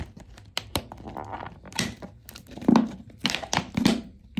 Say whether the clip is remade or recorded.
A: remade